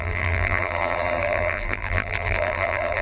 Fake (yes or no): yes